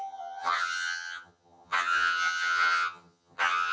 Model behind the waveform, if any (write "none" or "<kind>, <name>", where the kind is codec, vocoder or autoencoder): vocoder, HiFi-GAN